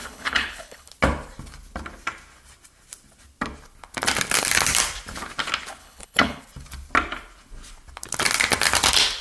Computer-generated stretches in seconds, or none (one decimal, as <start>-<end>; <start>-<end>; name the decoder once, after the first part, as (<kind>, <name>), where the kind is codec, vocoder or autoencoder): 0.0-0.9 (codec, HILCodec); 5.8-6.4